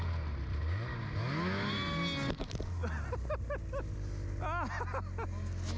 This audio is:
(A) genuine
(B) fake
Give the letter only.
A